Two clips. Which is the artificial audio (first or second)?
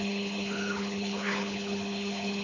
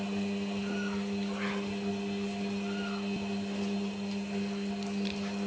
first